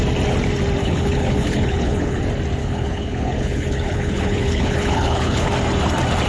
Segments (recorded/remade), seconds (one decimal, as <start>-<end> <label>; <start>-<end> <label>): 0.0-0.8 recorded; 0.8-2.2 remade; 2.2-2.6 recorded; 2.6-5.5 remade; 5.5-6.3 recorded